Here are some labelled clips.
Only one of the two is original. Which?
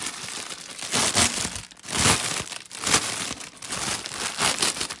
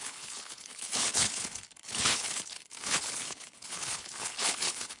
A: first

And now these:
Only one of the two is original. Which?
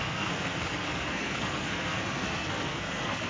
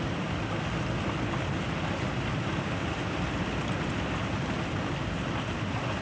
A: second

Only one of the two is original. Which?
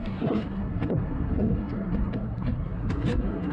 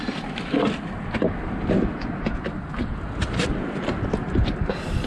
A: second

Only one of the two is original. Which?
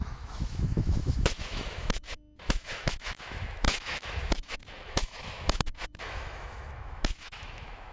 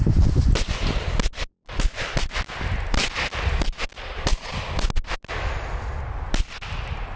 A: second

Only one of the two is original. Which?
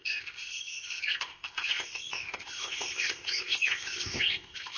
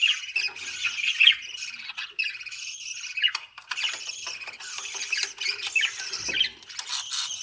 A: second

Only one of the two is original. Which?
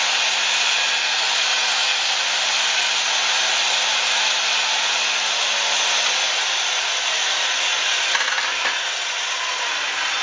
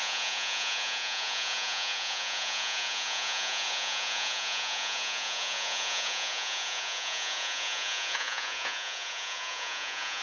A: first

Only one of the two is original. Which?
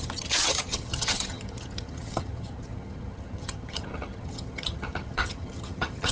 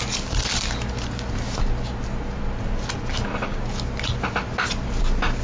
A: second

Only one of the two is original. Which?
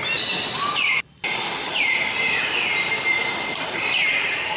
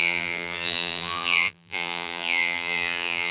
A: first